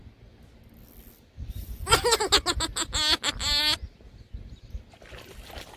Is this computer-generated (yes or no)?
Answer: no